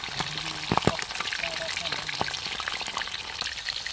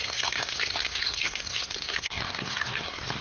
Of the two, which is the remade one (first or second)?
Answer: second